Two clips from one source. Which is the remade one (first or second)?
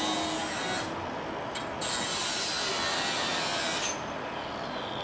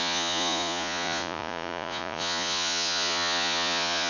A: second